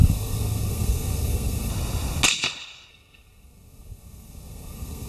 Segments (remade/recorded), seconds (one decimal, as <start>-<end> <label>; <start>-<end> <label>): 0.0-1.7 remade; 1.7-2.9 recorded; 2.9-5.1 remade